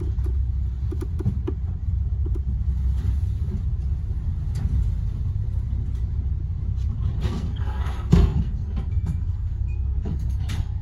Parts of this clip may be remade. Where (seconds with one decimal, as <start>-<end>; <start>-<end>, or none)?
7.2-10.8